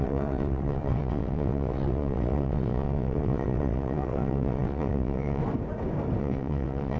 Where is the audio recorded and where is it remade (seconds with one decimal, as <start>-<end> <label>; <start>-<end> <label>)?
0.0-5.4 remade; 5.4-6.2 recorded; 6.2-7.0 remade